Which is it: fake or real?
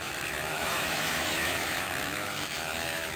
fake